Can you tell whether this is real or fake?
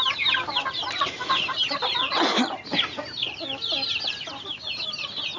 real